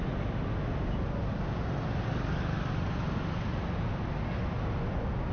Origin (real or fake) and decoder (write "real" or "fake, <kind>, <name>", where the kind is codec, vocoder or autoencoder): real